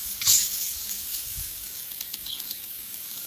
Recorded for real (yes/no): no